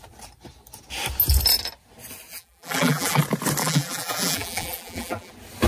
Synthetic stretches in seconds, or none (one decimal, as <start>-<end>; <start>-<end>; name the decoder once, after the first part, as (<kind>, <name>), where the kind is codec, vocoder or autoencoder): 2.3-3.2 (vocoder, BigVGAN v2); 3.6-5.3